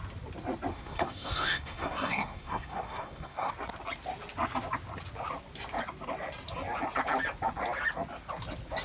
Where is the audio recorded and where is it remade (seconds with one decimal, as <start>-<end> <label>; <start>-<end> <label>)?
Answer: 0.0-0.7 recorded; 0.7-3.5 remade; 3.5-8.8 recorded